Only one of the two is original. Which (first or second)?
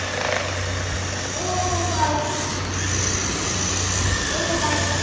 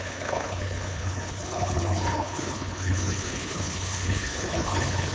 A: first